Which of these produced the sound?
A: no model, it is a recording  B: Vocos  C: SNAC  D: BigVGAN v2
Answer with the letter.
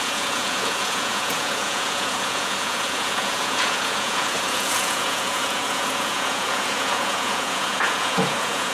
B